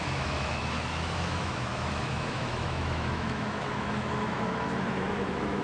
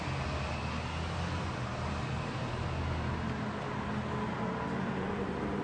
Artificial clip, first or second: first